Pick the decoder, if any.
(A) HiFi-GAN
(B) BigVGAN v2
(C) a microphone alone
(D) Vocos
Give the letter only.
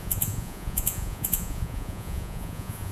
D